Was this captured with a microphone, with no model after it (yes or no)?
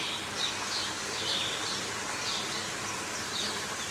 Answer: no